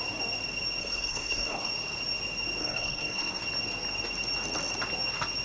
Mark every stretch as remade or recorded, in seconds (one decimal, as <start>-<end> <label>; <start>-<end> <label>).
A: 0.0-0.8 recorded; 0.8-1.7 remade; 1.7-2.6 recorded; 2.6-3.4 remade; 3.4-5.4 recorded